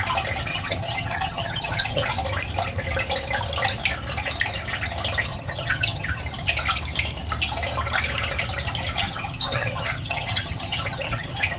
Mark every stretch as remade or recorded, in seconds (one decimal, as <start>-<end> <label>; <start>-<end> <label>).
0.0-0.5 recorded; 0.5-2.1 remade; 2.1-5.3 recorded; 5.3-6.2 remade; 6.2-9.0 recorded; 9.0-11.6 remade